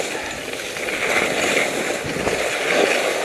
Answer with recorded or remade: recorded